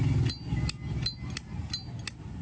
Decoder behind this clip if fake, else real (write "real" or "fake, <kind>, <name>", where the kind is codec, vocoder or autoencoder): real